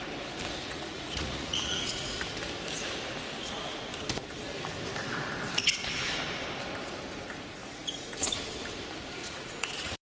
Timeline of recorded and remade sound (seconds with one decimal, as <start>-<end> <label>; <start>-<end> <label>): 0.0-0.6 recorded; 0.6-2.2 remade; 2.2-7.6 recorded; 7.6-8.4 remade; 8.4-9.2 recorded; 9.2-10.1 remade